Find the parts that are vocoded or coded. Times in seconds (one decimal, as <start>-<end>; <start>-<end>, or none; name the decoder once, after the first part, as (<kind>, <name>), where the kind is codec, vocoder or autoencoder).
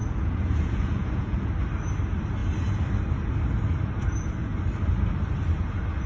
0.0-1.5 (vocoder, Vocos)